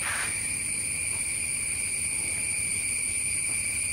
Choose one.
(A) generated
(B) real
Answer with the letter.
B